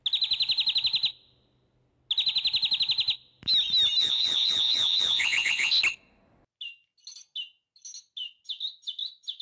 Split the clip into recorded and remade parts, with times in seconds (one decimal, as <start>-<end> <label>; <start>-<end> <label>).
0.0-4.0 recorded; 4.0-5.7 remade; 5.7-9.4 recorded